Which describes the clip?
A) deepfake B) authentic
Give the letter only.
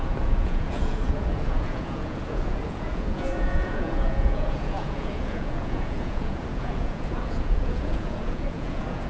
A